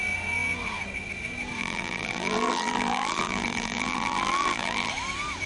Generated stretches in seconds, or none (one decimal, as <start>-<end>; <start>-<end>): 1.6-4.9